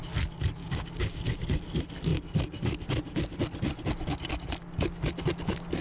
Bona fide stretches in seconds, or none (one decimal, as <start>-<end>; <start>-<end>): 0.0-0.6; 1.4-5.8